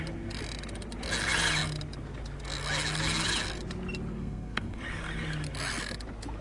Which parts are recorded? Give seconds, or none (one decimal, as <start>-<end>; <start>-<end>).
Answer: 0.0-4.1; 4.8-6.4